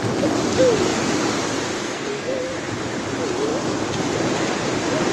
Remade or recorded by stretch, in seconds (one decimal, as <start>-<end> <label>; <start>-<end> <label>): 0.0-1.8 recorded; 1.8-2.4 remade; 2.4-5.1 recorded